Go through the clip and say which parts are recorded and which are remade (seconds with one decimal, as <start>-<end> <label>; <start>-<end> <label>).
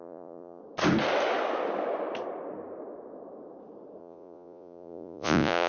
0.0-0.6 remade; 0.6-4.0 recorded; 4.0-5.7 remade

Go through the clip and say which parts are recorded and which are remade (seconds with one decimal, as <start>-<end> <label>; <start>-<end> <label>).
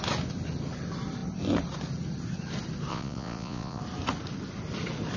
0.0-2.9 recorded; 2.9-3.8 remade; 3.8-5.2 recorded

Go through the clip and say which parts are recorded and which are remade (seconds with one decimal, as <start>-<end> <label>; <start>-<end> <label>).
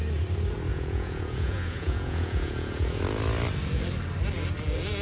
0.0-0.7 recorded; 0.7-3.0 remade; 3.0-5.0 recorded